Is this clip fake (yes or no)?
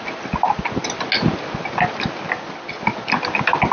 no